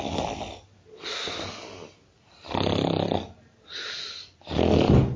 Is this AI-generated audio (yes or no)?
no